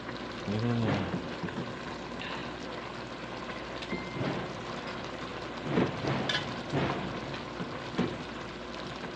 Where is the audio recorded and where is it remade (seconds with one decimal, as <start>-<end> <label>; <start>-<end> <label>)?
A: 0.0-9.2 recorded